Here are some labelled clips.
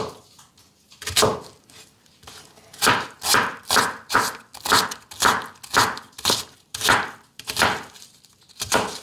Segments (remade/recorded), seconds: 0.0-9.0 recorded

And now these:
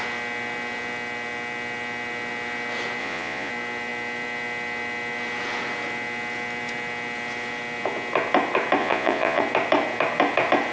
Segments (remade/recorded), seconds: 0.0-3.0 recorded; 3.0-3.5 remade; 3.5-8.8 recorded; 8.8-9.4 remade; 9.4-10.7 recorded

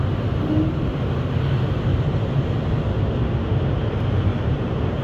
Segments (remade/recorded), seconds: 0.0-1.9 recorded; 1.9-2.8 remade; 2.8-4.3 recorded; 4.3-5.0 remade

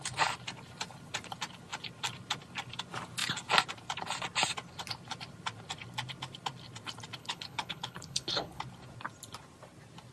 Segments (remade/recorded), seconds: 0.0-7.2 recorded; 7.2-8.6 remade; 8.6-10.1 recorded

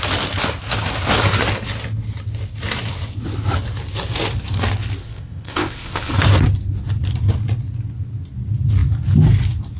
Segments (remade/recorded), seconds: 0.0-5.0 recorded; 5.0-6.1 remade; 6.1-9.8 recorded